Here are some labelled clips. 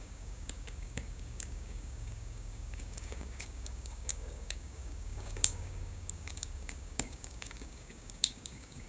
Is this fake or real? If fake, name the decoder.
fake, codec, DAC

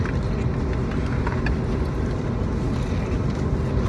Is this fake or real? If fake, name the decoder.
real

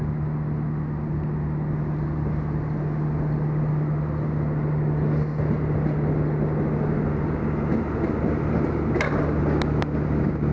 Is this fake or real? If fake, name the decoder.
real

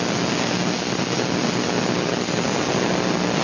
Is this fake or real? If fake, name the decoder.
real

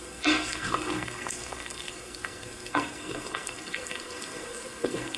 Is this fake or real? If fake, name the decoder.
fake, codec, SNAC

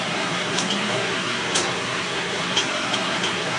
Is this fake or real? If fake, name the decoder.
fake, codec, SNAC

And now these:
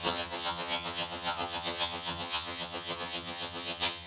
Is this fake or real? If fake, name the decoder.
fake, vocoder, HiFi-GAN